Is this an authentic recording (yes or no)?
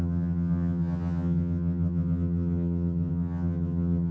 no